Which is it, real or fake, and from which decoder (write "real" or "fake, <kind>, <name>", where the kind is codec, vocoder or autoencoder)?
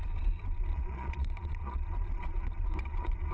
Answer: fake, vocoder, Vocos